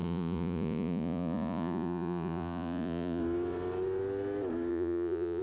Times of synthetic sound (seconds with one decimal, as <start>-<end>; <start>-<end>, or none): 0.0-3.2; 4.7-5.4